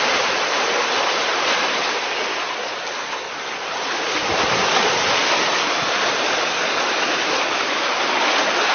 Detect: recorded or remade recorded